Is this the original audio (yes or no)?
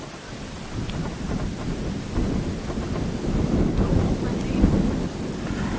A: yes